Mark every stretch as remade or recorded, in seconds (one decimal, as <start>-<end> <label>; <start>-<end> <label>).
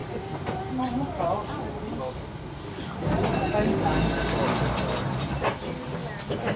0.0-3.8 recorded; 3.8-6.0 remade; 6.0-6.6 recorded